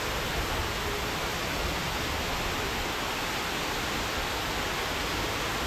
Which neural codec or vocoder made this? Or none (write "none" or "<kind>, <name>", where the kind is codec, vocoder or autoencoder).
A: none